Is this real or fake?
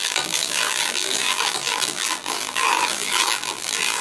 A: fake